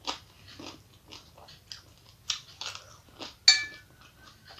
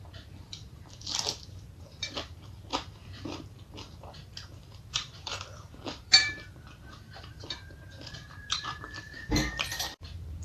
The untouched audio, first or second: first